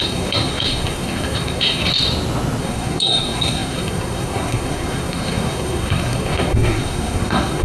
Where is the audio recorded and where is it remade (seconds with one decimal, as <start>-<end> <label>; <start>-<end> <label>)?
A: 0.0-1.9 remade; 1.9-2.6 recorded; 2.6-7.6 remade